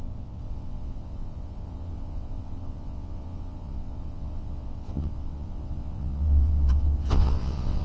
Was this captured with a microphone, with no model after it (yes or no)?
no